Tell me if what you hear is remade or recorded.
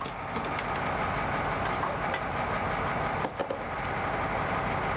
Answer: recorded